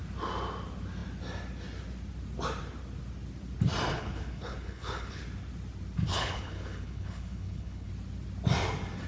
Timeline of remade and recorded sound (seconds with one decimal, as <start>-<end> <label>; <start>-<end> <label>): 0.0-3.9 recorded; 3.9-5.2 remade; 5.2-6.1 recorded; 6.1-7.9 remade; 7.9-9.1 recorded